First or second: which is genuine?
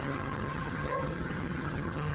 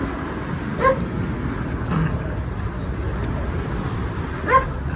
second